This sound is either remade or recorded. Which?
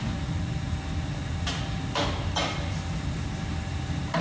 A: recorded